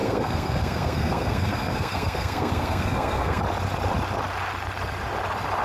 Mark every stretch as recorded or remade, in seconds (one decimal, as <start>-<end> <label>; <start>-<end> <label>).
0.0-3.4 remade; 3.4-5.6 recorded